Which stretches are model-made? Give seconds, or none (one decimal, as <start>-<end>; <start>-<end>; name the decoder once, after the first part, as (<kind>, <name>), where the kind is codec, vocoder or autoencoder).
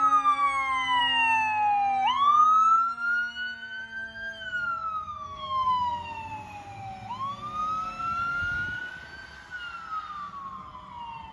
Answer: 4.8-5.9 (codec, DAC); 7.6-8.8